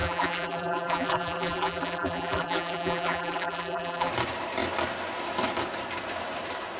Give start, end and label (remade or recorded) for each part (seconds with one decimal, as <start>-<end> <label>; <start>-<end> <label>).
0.0-4.1 remade; 4.1-6.8 recorded